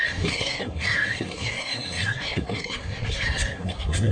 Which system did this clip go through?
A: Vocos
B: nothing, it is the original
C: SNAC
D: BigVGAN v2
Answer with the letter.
C